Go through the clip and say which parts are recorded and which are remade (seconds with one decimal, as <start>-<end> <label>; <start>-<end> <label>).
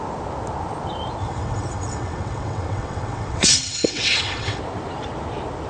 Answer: 0.0-1.2 recorded; 1.2-4.6 remade; 4.6-5.7 recorded